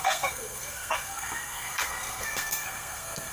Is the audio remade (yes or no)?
yes